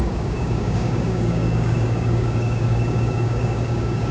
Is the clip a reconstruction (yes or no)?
yes